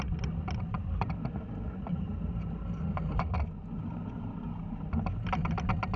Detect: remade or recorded recorded